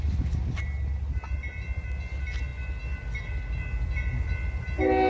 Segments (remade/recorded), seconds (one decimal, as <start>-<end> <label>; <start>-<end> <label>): 0.0-5.1 recorded